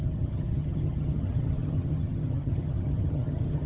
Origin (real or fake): fake